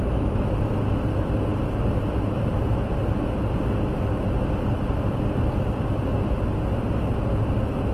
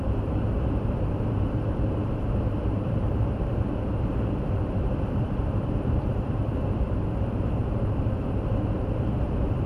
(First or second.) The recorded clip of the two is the first